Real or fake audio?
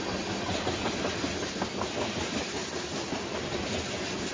real